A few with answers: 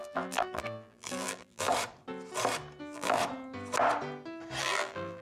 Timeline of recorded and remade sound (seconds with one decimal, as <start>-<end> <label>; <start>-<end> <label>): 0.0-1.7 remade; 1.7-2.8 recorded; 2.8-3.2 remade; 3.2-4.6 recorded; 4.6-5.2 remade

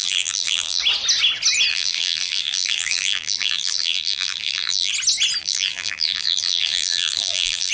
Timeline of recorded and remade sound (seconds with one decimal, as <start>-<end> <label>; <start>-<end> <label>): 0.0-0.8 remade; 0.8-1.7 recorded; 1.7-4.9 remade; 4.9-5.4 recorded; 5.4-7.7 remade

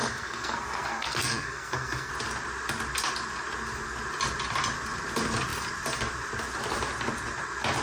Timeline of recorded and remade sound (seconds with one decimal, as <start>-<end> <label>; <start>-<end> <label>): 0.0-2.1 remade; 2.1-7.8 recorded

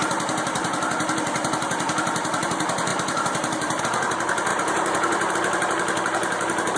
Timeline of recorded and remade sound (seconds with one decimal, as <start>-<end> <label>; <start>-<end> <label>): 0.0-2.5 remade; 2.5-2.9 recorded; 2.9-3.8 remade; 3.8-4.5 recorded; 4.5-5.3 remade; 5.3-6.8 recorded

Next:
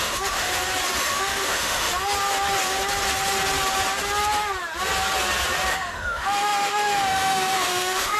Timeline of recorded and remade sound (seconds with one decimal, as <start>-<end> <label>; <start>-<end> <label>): 0.0-0.5 remade; 0.5-1.0 recorded; 1.0-1.9 remade; 1.9-5.7 recorded; 5.7-8.2 remade